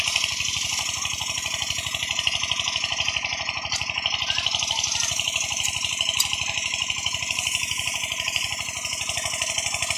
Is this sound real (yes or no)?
yes